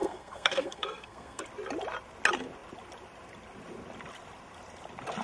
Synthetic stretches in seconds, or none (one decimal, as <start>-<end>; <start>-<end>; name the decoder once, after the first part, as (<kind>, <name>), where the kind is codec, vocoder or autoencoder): 0.0-1.4 (codec, SNAC)